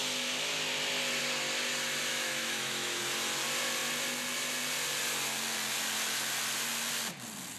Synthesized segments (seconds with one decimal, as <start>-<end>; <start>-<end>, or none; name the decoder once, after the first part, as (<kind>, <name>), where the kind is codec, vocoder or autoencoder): 2.1-3.0 (autoencoder, DAC-VAE)

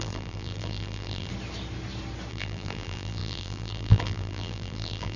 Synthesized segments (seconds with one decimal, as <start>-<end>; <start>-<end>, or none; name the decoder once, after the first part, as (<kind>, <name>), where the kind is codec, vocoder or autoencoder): 0.0-1.3 (vocoder, BigVGAN v2); 2.3-5.2